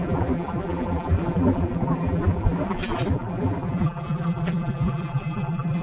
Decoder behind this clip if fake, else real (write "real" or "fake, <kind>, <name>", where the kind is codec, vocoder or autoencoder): fake, vocoder, BigVGAN v2